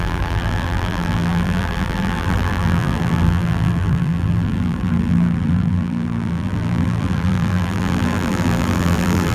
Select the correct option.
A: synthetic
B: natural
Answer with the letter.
A